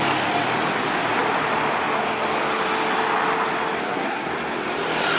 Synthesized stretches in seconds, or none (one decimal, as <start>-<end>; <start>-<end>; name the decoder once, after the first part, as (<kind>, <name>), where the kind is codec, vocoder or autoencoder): 3.8-4.3 (codec, SNAC)